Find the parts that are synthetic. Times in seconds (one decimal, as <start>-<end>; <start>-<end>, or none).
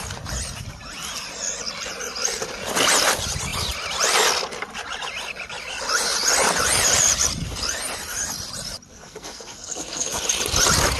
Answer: 8.9-10.2